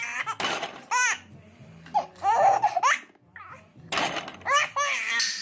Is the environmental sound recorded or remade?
recorded